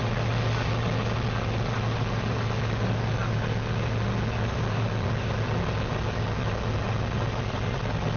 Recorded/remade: recorded